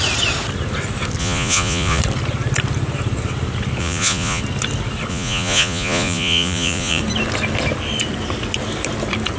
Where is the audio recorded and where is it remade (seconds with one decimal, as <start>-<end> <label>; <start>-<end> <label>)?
0.0-1.2 recorded; 1.2-2.0 remade; 2.0-3.8 recorded; 3.8-4.4 remade; 4.4-5.1 recorded; 5.1-7.0 remade; 7.0-9.4 recorded